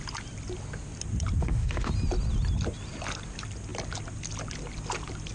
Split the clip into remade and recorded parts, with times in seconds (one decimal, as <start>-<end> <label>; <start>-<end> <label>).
0.0-1.4 recorded; 1.4-1.9 remade; 1.9-5.3 recorded